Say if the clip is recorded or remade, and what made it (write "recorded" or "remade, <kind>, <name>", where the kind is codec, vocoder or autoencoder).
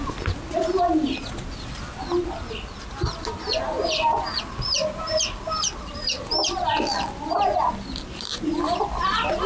recorded